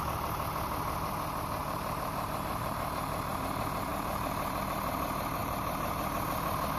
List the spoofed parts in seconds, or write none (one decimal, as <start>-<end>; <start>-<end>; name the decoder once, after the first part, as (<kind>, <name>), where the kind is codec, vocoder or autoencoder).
1.6-3.3 (vocoder, BigVGAN v2); 3.9-4.6; 5.4-6.3